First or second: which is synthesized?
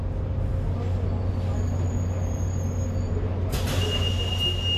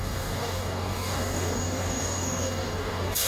second